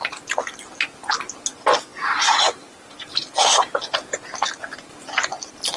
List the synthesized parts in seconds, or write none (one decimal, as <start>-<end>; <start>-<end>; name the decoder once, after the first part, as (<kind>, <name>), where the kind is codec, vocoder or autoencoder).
none